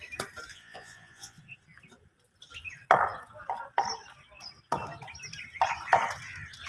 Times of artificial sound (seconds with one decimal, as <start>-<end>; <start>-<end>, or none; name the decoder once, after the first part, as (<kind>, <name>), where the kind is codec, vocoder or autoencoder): 0.5-1.4 (vocoder, Vocos)